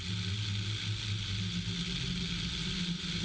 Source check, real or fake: real